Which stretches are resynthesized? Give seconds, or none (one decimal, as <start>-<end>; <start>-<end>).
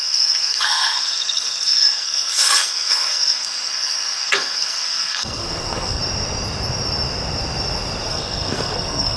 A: 0.0-6.0; 8.1-9.2